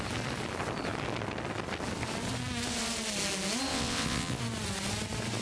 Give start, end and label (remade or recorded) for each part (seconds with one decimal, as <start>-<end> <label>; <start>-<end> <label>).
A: 0.0-3.7 recorded; 3.7-4.4 remade; 4.4-5.4 recorded